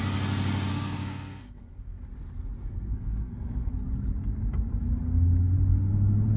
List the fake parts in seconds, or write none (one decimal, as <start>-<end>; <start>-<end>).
0.7-2.0; 2.6-3.7